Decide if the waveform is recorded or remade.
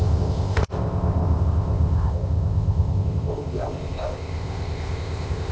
remade